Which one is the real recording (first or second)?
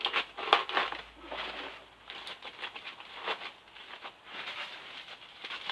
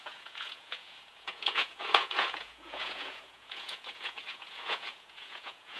first